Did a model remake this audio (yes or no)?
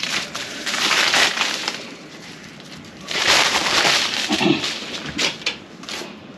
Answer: yes